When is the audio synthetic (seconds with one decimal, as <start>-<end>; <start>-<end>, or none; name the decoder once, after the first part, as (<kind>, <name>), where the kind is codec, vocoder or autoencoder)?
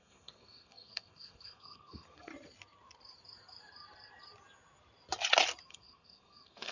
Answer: 0.0-2.3 (codec, SNAC); 5.6-6.7